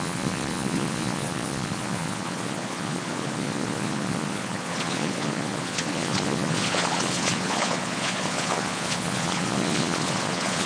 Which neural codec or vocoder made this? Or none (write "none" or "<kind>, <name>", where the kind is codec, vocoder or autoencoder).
vocoder, Vocos